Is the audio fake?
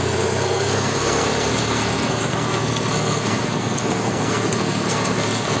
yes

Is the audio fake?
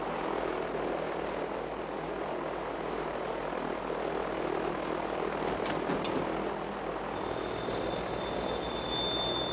no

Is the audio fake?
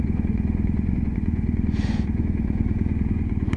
yes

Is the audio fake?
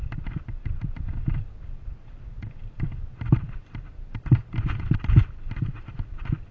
yes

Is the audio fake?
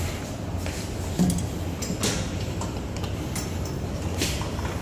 no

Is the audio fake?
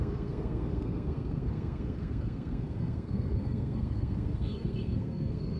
yes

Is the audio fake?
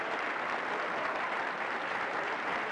no